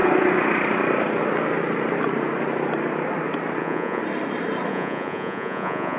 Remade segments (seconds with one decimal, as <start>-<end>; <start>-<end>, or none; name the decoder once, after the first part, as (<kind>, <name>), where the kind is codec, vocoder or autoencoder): 3.6-4.0 (vocoder, Vocos); 4.7-6.0